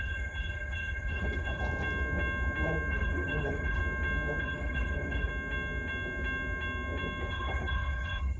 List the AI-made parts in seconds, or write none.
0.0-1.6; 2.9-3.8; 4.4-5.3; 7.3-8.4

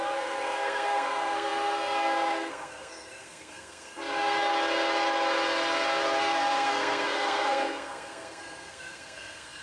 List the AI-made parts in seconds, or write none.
0.0-4.5; 6.2-9.6

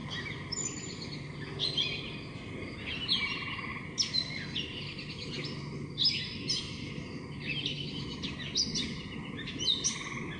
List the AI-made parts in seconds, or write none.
0.0-1.1